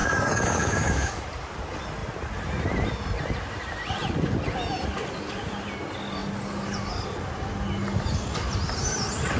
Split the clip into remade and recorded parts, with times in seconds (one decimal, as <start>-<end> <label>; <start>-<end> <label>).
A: 0.0-1.2 remade; 1.2-9.4 recorded